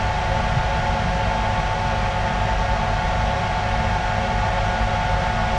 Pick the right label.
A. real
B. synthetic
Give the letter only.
A